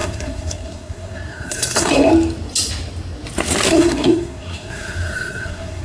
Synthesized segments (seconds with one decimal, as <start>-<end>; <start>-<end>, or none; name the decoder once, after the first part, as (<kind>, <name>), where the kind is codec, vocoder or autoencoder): 0.0-2.1 (codec, SNAC); 3.7-5.8